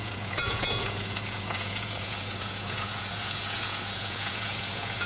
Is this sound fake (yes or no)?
yes